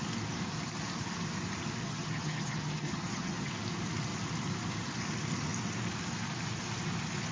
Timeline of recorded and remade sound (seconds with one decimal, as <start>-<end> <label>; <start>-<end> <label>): 0.0-1.8 recorded; 1.8-3.5 remade; 3.5-7.3 recorded